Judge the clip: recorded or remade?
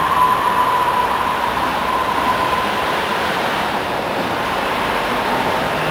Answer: remade